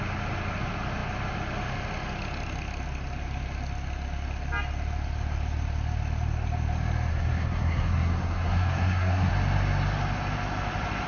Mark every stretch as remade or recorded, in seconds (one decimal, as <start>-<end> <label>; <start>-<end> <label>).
0.0-7.1 recorded; 7.1-9.3 remade; 9.3-11.1 recorded